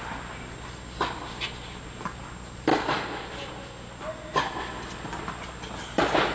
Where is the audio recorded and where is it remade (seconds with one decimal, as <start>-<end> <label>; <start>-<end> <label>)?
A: 0.0-6.3 recorded